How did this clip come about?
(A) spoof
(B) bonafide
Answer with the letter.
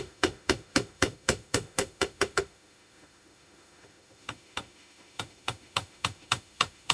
A